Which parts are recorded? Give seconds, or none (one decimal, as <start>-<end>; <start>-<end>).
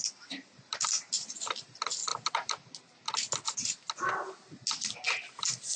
0.0-5.8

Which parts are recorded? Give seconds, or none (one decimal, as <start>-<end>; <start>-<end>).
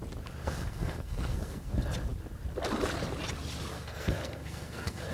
0.0-0.4; 1.7-3.7